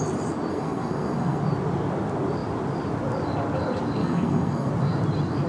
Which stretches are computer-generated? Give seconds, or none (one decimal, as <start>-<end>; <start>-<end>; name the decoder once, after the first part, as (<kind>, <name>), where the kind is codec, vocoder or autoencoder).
0.5-1.4 (codec, SNAC); 4.0-4.7